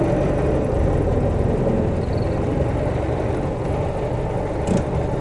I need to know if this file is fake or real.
real